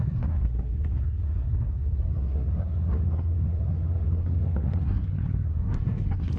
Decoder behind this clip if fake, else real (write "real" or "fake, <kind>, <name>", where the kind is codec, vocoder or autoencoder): fake, codec, SNAC